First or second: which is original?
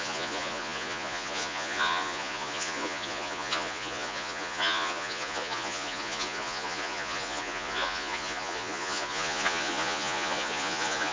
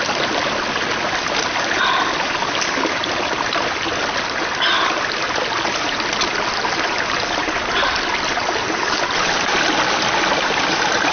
second